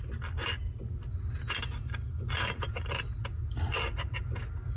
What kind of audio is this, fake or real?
real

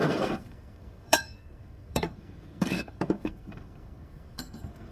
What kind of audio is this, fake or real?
fake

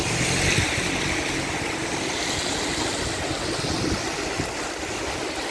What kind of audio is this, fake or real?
real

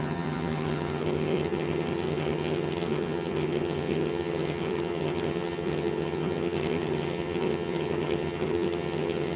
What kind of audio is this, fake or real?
fake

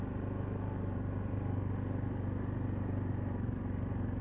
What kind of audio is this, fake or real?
real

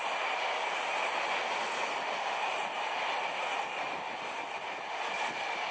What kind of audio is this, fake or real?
real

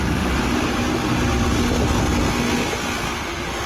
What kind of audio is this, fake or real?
real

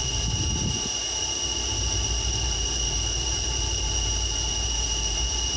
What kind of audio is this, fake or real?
fake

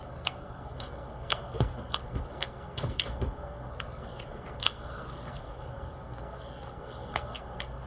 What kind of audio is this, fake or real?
fake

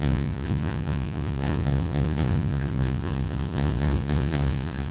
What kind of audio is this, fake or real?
fake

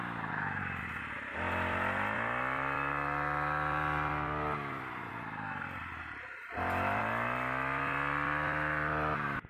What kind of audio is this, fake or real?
real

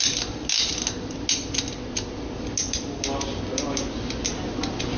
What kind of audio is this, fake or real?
real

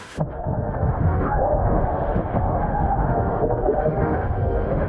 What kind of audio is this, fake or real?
fake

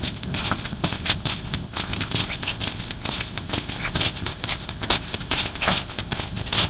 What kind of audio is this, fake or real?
fake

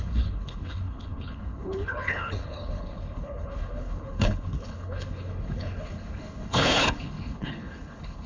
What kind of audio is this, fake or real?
fake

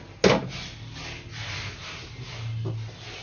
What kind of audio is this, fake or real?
real